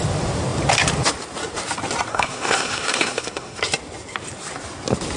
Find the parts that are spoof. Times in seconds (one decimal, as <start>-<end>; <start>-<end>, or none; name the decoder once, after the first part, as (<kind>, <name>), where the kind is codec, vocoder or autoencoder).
2.1-3.6 (codec, SNAC)